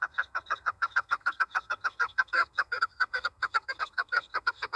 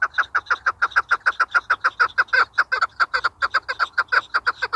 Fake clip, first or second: first